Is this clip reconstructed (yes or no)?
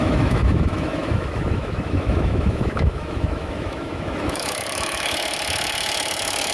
yes